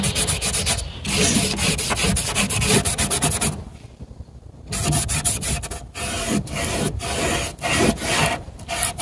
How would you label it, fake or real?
real